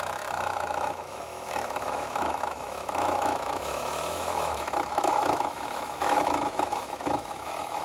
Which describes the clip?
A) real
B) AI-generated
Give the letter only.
B